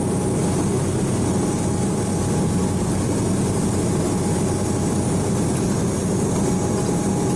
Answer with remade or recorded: recorded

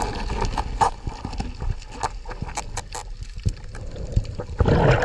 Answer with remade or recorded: recorded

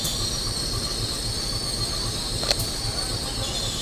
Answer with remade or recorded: recorded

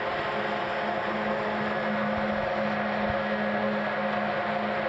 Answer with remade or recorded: recorded